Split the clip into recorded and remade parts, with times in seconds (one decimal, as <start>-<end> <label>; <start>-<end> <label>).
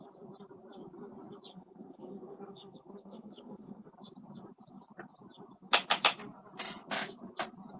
0.0-1.5 recorded; 1.5-3.9 remade; 3.9-7.8 recorded